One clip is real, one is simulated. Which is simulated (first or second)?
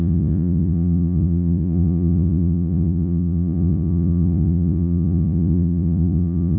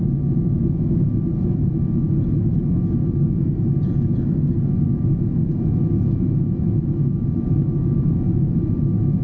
first